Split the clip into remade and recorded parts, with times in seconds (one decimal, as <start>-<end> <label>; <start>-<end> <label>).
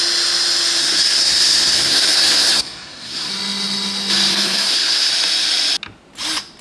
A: 0.0-0.8 recorded; 0.8-3.3 remade; 3.3-4.3 recorded; 4.3-5.1 remade; 5.1-6.6 recorded